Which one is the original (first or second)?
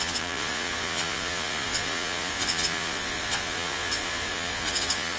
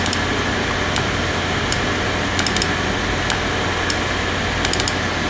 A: second